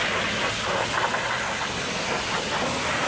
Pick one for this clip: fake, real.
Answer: real